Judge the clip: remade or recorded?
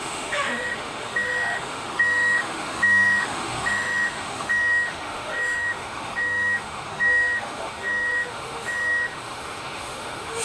remade